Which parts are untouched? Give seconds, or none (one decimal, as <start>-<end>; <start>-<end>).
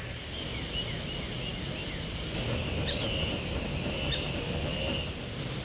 0.0-5.6